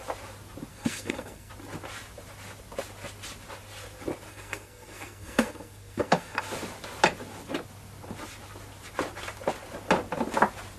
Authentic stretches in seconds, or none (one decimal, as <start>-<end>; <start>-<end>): 0.0-0.7; 1.5-4.3; 6.4-10.8